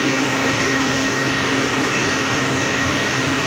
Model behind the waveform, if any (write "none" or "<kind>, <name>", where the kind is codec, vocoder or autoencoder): codec, DAC